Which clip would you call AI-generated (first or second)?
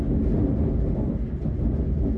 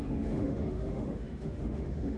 second